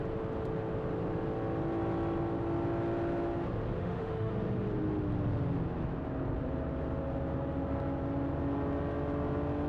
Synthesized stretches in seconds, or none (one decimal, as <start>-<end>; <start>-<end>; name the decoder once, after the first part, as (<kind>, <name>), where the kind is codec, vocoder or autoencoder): 3.8-4.3 (autoencoder, DAC-VAE)